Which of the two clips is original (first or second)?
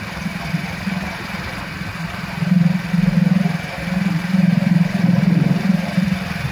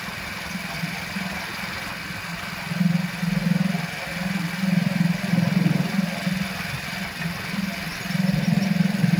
second